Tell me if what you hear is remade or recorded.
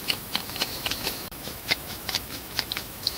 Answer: remade